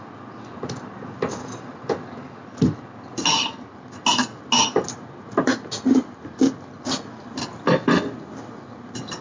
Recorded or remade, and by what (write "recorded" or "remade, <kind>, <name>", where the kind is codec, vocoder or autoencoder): recorded